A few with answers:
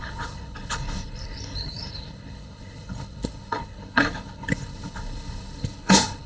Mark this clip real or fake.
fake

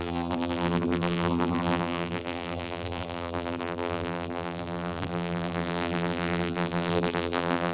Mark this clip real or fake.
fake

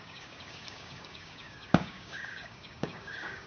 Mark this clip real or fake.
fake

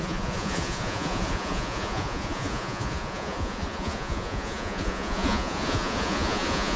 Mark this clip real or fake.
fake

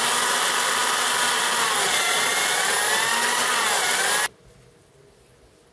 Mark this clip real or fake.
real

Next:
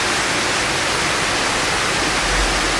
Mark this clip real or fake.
real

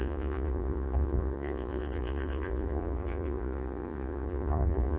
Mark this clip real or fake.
fake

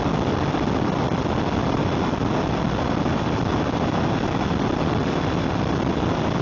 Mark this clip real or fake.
real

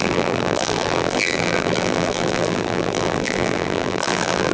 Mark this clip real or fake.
fake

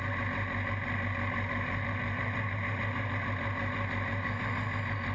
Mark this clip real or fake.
real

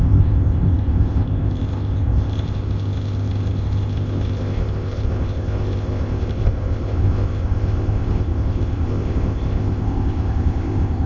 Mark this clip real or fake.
fake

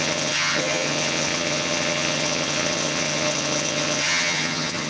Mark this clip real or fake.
fake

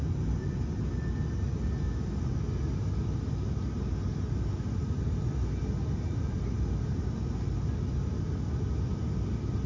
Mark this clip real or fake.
real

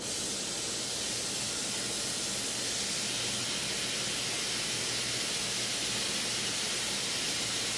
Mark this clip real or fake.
real